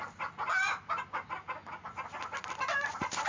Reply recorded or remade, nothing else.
recorded